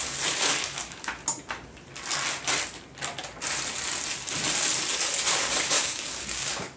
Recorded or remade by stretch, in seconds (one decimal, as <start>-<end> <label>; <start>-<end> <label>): 0.0-1.2 remade; 1.2-5.3 recorded; 5.3-6.8 remade